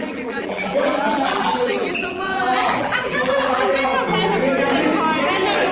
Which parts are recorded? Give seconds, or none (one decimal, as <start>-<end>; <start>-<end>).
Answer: 3.9-5.7